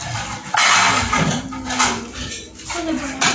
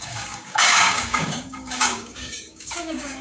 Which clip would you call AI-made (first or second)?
second